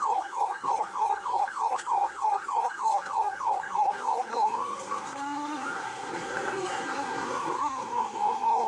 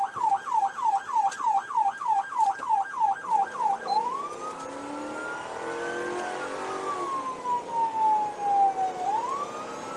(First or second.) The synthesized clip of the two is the first